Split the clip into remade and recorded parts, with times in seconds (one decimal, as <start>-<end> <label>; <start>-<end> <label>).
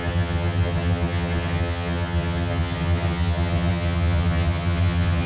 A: 0.0-5.3 remade